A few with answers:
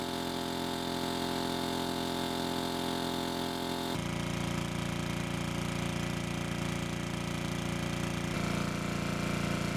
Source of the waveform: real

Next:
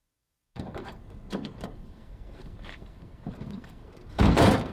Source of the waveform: fake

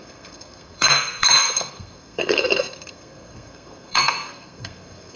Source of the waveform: fake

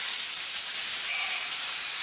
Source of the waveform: real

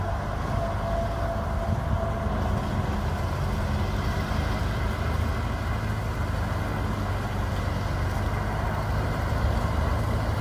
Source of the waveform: real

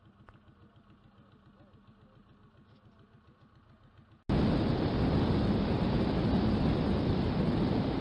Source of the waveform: real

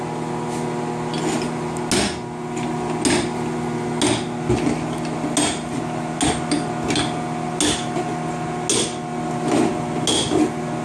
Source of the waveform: real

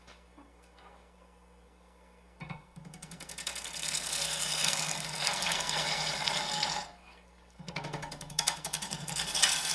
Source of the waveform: fake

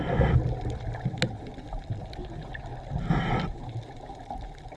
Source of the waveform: real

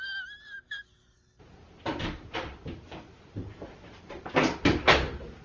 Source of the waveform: real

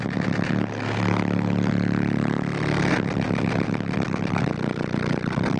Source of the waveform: real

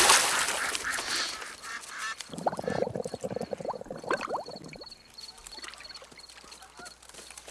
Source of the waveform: real